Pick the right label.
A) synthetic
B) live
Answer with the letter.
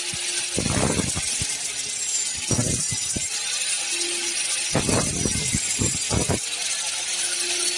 B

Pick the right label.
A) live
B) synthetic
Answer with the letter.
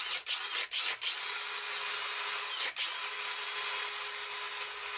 A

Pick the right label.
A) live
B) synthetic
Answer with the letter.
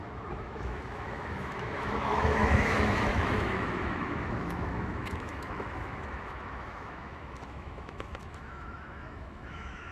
B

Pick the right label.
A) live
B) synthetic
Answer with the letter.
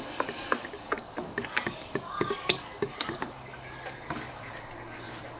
B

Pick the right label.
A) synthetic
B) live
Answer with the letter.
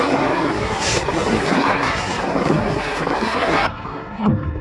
A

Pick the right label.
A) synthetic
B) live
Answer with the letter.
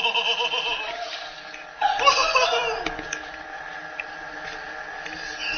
B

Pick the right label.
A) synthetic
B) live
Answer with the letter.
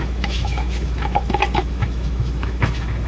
A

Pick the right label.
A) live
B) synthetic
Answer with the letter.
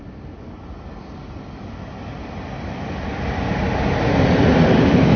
A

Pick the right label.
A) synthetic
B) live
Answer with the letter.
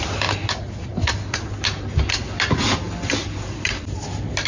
B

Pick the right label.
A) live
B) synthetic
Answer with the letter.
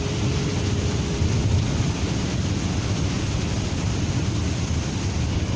A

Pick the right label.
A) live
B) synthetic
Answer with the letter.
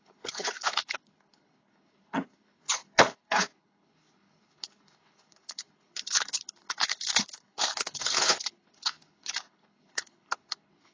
B